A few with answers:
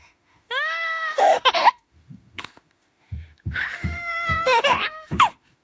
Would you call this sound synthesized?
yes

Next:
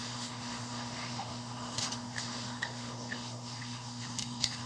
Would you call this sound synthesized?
yes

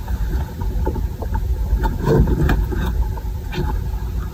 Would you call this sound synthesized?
no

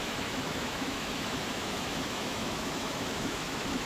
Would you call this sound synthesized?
yes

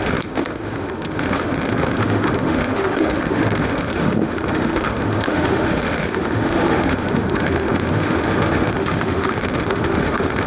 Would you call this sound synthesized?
yes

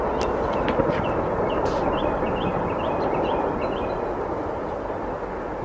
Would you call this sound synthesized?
no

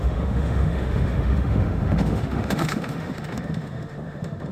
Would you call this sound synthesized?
yes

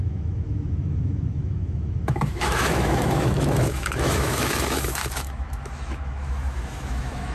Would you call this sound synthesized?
yes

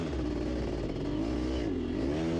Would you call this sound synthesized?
no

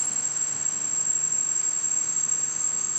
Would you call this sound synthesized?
yes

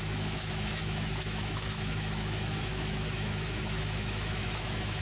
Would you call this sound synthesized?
yes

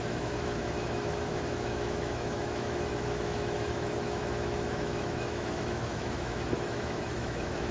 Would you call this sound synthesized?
yes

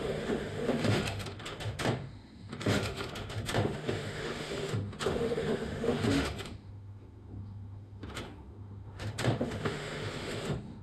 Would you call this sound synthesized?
yes